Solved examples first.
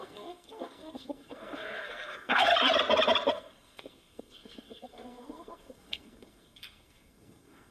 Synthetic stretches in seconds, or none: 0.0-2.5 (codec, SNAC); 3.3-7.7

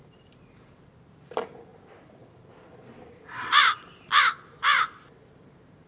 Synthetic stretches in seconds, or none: 0.0-5.9 (vocoder, BigVGAN v2)

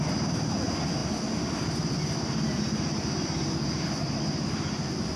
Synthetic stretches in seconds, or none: none

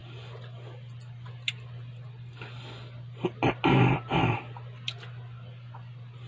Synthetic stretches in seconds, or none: none

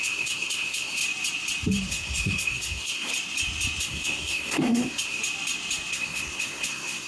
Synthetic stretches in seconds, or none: 0.0-1.0 (codec, SNAC); 1.8-3.1; 3.8-5.2; 5.9-7.1

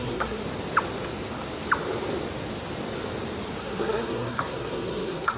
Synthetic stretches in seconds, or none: 0.0-0.4 (codec, SNAC); 3.6-5.4

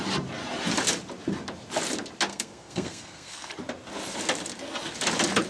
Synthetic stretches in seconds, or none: 2.3-3.5 (codec, SNAC)